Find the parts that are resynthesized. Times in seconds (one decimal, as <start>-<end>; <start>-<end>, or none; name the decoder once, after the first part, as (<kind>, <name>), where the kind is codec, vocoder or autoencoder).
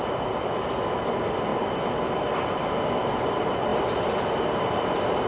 none